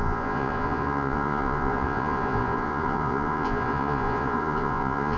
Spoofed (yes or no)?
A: yes